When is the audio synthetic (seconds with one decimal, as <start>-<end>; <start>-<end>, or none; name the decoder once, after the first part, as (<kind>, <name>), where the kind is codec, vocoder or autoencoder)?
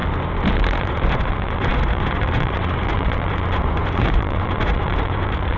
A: 0.8-5.6 (vocoder, Vocos)